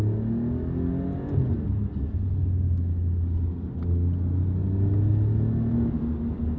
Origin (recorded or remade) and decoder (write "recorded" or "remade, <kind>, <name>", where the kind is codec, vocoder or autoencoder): recorded